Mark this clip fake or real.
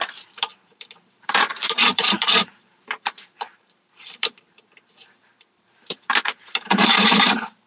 fake